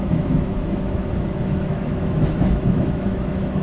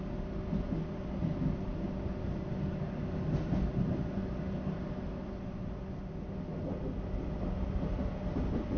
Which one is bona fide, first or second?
second